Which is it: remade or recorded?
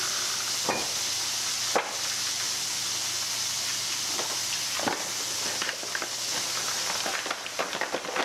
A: recorded